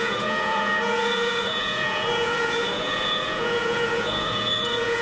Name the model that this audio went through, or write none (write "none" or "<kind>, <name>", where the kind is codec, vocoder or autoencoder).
vocoder, Vocos